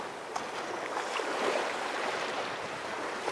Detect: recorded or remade remade